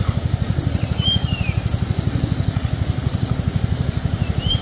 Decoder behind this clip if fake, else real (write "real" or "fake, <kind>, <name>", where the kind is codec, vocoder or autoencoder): real